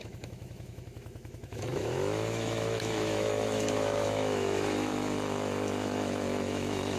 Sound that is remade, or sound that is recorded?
remade